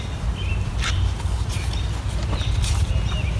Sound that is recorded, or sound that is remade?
recorded